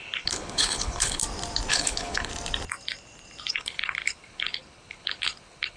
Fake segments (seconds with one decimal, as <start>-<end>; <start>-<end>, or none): 0.0-1.2; 1.7-2.3; 3.5-5.8